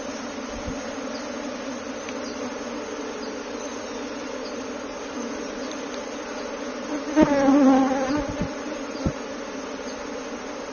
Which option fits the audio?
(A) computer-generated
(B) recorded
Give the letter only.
B